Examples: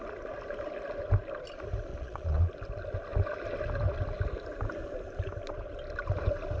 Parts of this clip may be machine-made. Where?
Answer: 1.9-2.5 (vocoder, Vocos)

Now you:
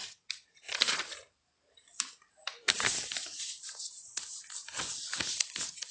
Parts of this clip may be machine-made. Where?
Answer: 0.0-4.6 (vocoder, BigVGAN v2)

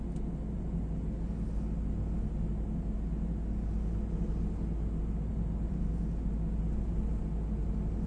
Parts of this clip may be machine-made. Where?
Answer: 5.3-6.3 (vocoder, BigVGAN v2)

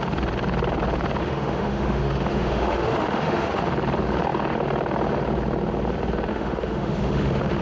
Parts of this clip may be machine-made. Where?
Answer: 1.2-3.6 (autoencoder, DAC-VAE); 6.3-7.6

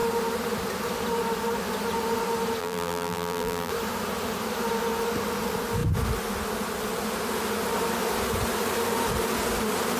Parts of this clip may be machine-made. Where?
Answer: 2.6-3.7 (vocoder, BigVGAN v2)

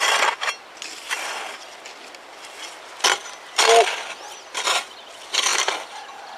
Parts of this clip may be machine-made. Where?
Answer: none

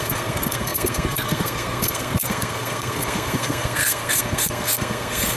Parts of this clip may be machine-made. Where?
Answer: 0.0-5.4 (codec, SNAC)

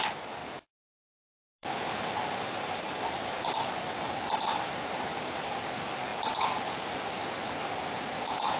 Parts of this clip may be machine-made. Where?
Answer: 0.4-5.6 (vocoder, BigVGAN v2)